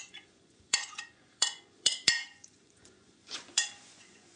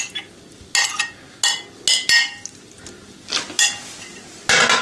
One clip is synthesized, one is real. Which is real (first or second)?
second